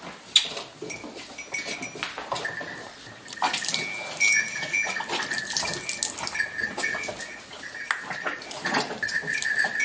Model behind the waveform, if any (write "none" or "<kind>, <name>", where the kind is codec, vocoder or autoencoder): none